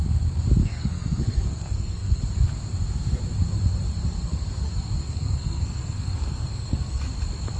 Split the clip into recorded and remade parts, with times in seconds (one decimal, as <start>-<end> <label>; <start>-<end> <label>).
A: 0.0-0.6 recorded; 0.6-2.2 remade; 2.2-5.0 recorded; 5.0-7.0 remade; 7.0-7.6 recorded